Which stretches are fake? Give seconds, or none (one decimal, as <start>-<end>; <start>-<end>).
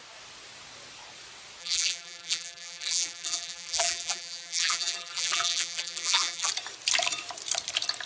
1.6-6.5